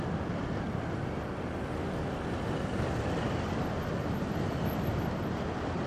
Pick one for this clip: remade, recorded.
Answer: recorded